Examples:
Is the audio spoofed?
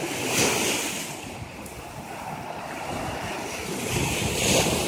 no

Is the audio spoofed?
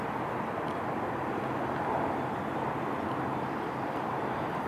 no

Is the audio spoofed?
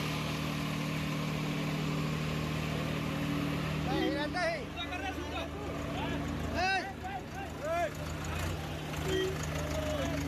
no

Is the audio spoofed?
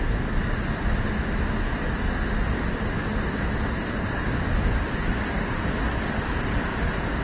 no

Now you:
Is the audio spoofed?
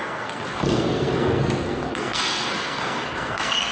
yes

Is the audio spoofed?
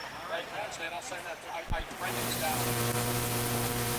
yes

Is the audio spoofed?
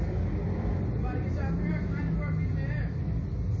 no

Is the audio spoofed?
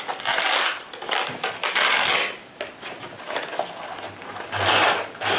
no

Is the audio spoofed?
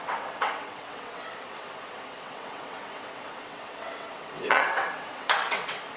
yes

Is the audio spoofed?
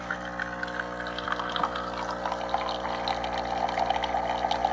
no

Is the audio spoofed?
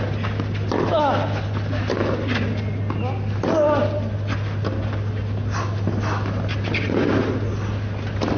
no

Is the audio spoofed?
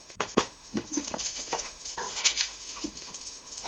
yes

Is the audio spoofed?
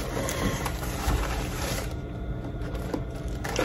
yes